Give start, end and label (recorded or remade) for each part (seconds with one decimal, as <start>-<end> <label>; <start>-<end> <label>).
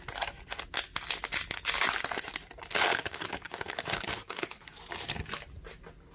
0.0-2.9 recorded; 2.9-4.6 remade; 4.6-6.1 recorded